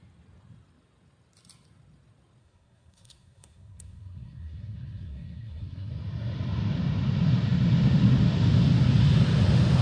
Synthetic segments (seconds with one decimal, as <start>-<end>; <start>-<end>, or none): 2.4-5.9